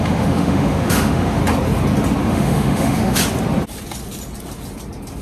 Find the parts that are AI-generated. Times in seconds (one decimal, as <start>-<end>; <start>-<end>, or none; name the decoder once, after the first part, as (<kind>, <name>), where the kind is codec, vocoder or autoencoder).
0.0-1.4 (autoencoder, DAC-VAE); 2.3-3.2